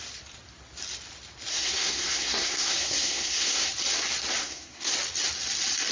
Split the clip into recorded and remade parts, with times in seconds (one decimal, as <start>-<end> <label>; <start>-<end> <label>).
0.0-1.5 recorded; 1.5-3.7 remade; 3.7-4.4 recorded; 4.4-4.9 remade; 4.9-5.9 recorded

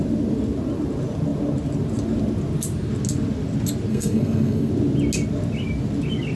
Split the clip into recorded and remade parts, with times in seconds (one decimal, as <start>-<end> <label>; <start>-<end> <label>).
0.0-3.9 recorded; 3.9-4.7 remade; 4.7-6.4 recorded

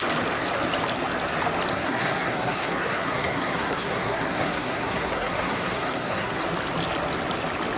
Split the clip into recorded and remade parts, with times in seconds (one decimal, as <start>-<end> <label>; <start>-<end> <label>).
0.0-1.7 recorded; 1.7-6.4 remade; 6.4-7.8 recorded

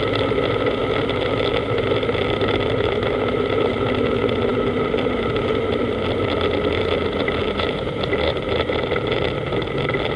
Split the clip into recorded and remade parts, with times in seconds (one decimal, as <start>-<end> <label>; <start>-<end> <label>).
0.0-10.2 recorded

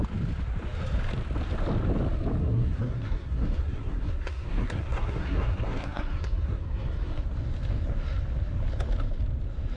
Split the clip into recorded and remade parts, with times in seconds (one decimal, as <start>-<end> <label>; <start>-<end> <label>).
0.0-2.4 recorded; 2.4-7.2 remade; 7.2-9.8 recorded

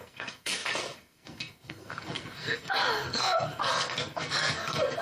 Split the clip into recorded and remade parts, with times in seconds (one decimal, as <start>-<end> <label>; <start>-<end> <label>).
0.0-5.0 remade